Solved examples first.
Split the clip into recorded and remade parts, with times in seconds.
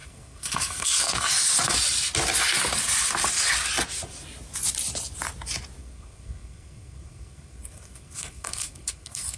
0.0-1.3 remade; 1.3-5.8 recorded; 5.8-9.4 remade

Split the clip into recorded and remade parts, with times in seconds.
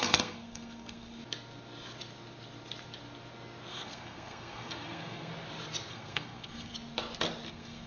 0.0-1.2 remade; 1.2-3.7 recorded; 3.7-5.3 remade; 5.3-5.9 recorded; 5.9-6.7 remade; 6.7-7.5 recorded; 7.5-7.9 remade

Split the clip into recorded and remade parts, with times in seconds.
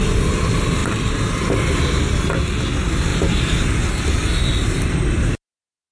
0.0-5.9 recorded